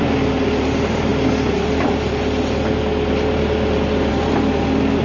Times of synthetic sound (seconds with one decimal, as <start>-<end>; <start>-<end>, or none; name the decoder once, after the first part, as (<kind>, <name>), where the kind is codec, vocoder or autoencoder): none